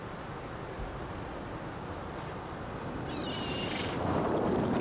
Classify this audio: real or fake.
real